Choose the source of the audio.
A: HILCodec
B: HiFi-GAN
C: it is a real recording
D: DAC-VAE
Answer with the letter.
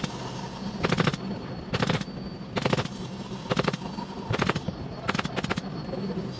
C